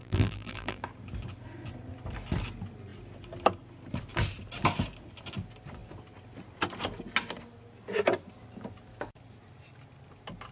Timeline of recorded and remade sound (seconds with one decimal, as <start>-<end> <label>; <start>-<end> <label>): 0.0-0.8 remade; 0.8-10.5 recorded